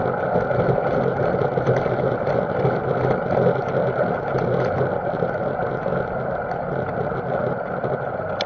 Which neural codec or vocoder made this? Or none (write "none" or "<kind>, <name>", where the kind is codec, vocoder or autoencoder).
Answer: none